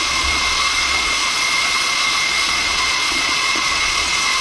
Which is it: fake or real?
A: fake